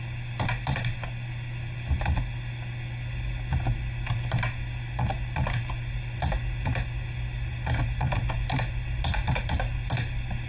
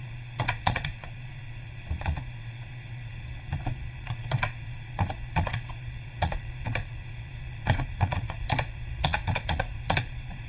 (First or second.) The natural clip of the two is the first